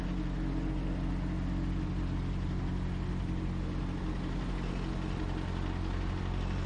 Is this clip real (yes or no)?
yes